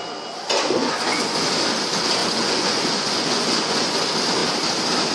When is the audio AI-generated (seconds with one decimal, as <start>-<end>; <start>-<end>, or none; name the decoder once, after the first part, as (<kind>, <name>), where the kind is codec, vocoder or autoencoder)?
0.8-1.5 (vocoder, Vocos); 2.2-4.0